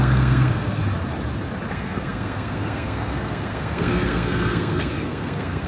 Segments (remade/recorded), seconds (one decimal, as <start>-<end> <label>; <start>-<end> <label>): 0.0-0.8 remade; 0.8-1.7 recorded; 1.7-5.7 remade